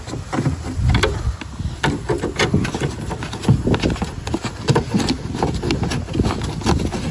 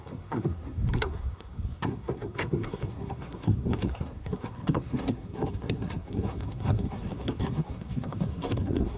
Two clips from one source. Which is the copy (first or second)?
second